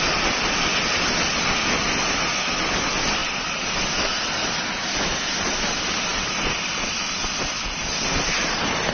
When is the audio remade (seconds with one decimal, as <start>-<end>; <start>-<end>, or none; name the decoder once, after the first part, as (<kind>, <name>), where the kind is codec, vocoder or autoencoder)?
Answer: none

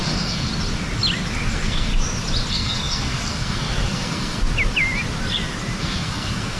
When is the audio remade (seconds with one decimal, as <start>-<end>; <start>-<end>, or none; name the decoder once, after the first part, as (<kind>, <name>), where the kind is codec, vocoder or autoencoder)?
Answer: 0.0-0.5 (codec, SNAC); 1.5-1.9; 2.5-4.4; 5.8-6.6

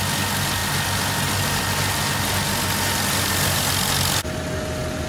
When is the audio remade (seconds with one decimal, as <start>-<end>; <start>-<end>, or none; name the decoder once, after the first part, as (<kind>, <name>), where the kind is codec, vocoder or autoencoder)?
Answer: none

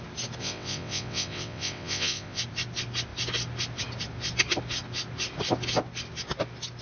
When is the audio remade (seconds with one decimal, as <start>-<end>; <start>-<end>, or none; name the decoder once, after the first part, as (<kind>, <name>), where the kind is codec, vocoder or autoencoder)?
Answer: 0.4-2.4 (vocoder, WaveNeXt)

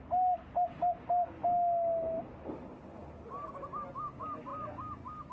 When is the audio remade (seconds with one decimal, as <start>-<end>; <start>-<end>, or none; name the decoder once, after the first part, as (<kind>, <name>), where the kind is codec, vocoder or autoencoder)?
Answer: none